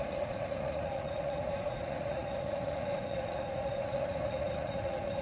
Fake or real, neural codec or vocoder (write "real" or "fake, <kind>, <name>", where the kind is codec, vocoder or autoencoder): fake, vocoder, Vocos